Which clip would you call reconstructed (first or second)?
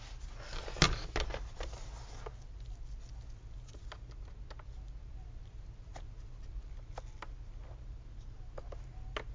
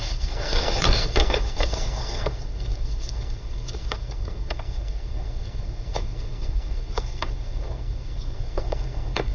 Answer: second